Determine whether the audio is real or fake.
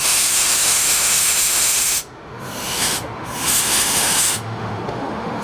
fake